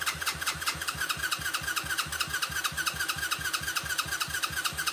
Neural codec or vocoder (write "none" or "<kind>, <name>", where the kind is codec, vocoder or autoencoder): none